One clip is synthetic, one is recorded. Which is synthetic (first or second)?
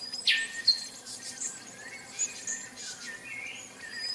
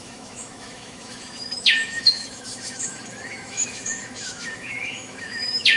second